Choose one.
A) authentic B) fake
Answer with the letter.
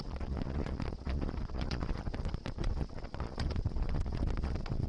B